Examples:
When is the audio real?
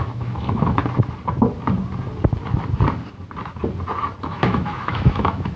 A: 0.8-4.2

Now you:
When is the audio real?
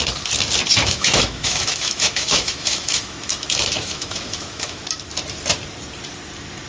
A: 0.0-0.8; 4.8-6.7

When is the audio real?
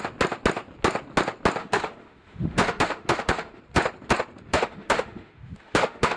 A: 0.0-1.6; 3.6-4.5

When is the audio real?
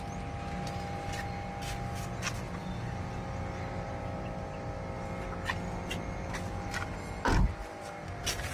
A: 0.0-8.5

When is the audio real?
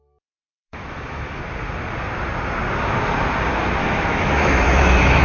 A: 0.0-0.5; 1.4-3.8